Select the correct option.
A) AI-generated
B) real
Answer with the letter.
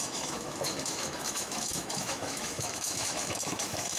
A